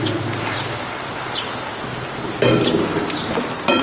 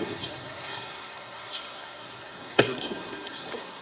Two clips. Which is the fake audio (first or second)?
second